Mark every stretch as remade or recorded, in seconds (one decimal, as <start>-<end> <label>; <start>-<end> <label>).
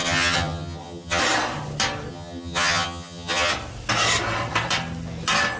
0.0-1.2 remade; 1.2-2.1 recorded; 2.1-3.5 remade; 3.5-5.6 recorded